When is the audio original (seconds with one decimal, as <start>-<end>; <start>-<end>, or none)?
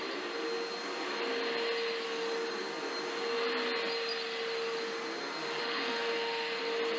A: 0.0-5.6; 6.6-7.0